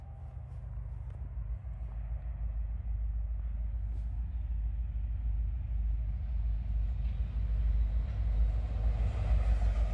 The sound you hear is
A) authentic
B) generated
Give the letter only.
A